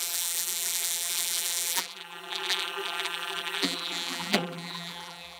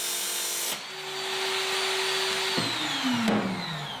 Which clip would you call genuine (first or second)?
second